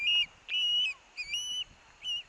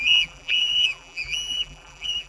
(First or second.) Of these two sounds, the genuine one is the first